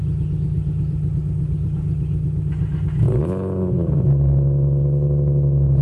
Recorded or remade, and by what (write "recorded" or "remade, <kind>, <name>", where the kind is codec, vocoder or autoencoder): recorded